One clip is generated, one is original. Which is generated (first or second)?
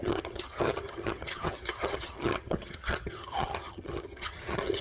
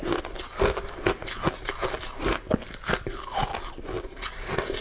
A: first